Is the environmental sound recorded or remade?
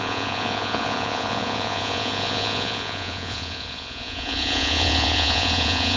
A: remade